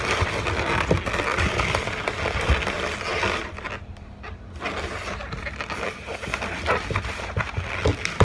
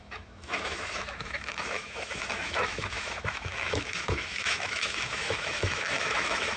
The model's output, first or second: second